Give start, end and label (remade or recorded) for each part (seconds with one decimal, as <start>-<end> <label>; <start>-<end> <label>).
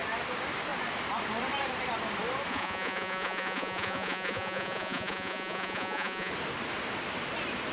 0.0-2.5 recorded; 2.5-6.3 remade; 6.3-7.7 recorded